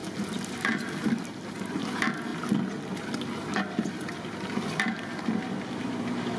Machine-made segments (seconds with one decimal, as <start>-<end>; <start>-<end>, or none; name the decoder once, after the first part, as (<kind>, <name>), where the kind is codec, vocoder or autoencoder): none